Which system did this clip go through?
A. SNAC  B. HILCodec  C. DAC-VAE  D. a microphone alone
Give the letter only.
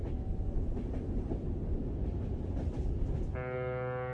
D